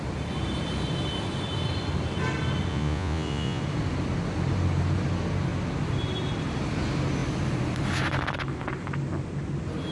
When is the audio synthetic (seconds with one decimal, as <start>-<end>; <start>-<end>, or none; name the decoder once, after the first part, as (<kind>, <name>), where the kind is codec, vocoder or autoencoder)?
2.7-3.6 (vocoder, Vocos)